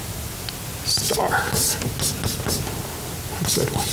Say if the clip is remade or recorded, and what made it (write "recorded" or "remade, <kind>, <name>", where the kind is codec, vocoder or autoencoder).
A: recorded